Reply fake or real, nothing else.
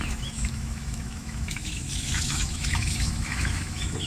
fake